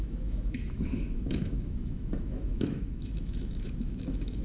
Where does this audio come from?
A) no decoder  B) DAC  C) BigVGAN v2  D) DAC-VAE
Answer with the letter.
D